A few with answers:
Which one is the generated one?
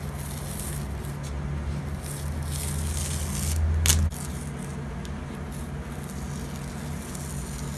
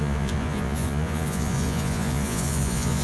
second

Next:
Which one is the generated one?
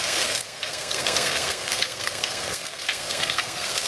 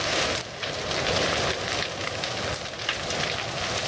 first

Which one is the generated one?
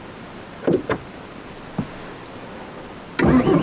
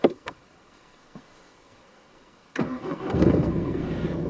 second